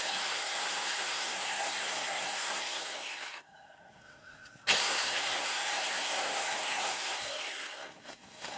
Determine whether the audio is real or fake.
fake